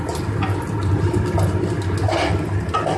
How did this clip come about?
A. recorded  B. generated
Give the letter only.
A